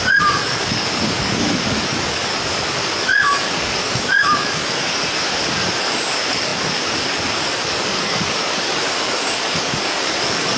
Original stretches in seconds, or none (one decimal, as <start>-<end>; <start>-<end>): 5.0-5.8